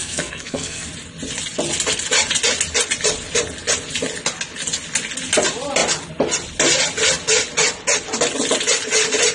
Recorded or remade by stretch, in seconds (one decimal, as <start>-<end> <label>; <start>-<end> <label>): 0.0-0.9 remade; 0.9-9.3 recorded

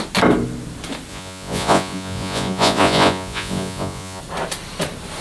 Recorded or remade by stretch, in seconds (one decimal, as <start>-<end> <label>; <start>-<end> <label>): 0.0-1.1 recorded; 1.1-4.2 remade; 4.2-5.2 recorded